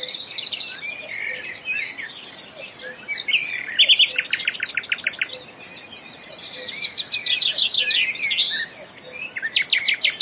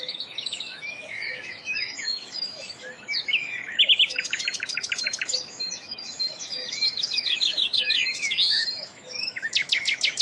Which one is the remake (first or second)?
second